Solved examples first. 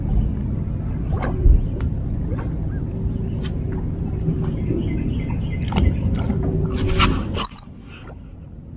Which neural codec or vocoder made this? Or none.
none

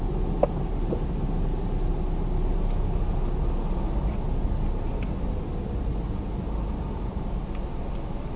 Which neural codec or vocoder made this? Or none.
none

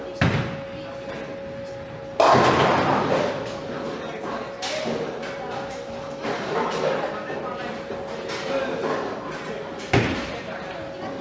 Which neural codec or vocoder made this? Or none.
none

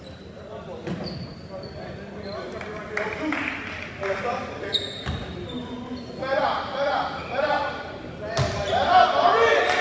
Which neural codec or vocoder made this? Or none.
none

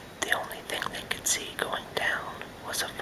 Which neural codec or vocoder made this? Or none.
none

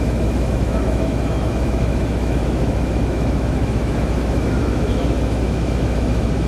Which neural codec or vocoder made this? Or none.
autoencoder, DAC-VAE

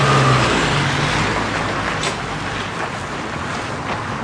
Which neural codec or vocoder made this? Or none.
none